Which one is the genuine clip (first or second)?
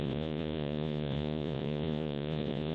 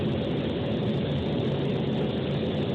second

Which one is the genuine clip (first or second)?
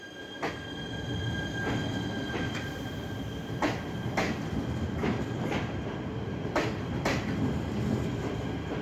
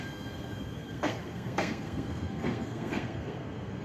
first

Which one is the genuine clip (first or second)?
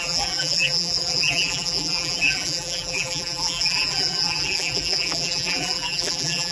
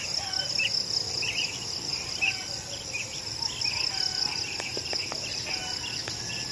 second